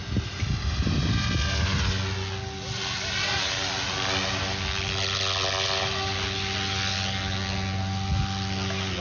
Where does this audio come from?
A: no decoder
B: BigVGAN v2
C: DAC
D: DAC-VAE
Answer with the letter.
A